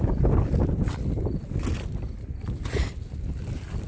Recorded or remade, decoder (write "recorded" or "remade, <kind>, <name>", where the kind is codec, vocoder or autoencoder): recorded